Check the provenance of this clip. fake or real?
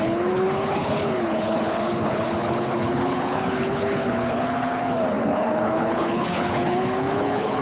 fake